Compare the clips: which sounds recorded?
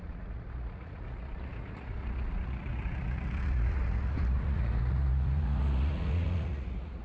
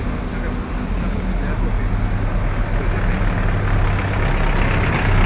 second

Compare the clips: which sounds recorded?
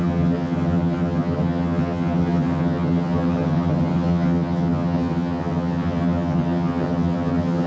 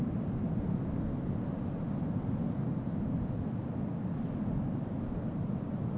second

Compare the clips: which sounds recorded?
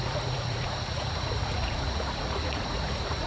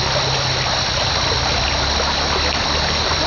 second